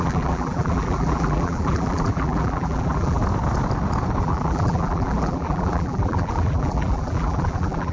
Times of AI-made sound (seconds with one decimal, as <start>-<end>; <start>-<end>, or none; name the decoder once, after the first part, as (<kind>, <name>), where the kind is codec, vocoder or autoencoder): 0.0-3.2 (vocoder, BigVGAN v2); 4.2-7.9